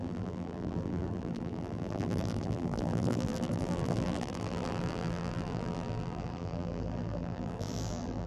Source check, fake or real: fake